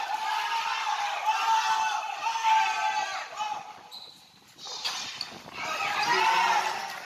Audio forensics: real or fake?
real